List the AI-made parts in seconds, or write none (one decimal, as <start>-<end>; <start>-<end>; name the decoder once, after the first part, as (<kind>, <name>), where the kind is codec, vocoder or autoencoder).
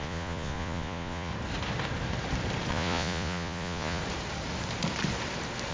0.0-1.3 (vocoder, Vocos); 2.7-4.0